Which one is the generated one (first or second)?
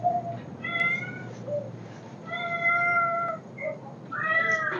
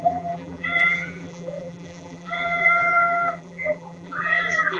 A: second